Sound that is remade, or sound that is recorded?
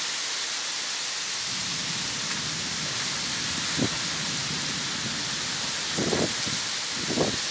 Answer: recorded